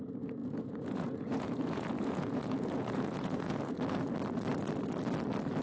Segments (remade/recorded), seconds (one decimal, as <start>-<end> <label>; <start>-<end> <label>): 0.0-0.4 recorded; 0.4-3.7 remade; 3.7-5.6 recorded